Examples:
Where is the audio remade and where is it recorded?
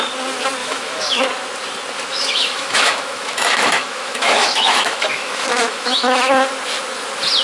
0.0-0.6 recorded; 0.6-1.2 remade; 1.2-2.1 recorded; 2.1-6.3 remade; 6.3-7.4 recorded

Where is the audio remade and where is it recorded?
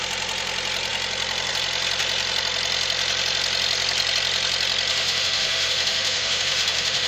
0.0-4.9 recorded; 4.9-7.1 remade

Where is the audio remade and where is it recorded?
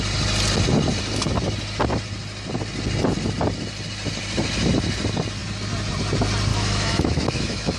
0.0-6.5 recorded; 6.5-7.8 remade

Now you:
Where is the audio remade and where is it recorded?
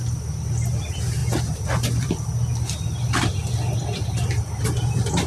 0.0-5.3 recorded